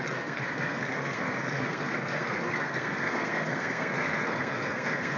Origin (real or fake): fake